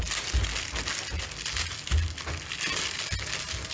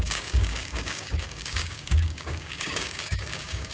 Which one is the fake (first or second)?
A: second